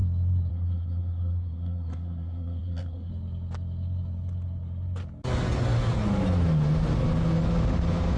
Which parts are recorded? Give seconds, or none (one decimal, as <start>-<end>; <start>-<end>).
0.0-0.5; 3.1-8.2